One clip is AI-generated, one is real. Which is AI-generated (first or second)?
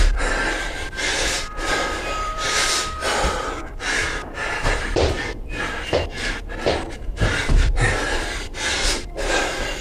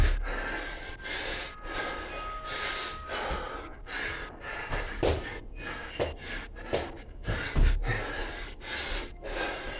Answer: first